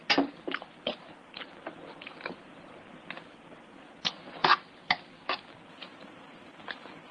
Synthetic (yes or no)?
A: no